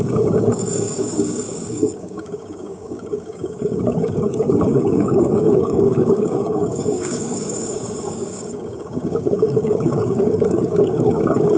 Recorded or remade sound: remade